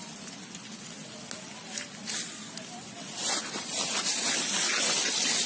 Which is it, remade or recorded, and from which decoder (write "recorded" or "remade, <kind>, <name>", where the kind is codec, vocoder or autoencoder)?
recorded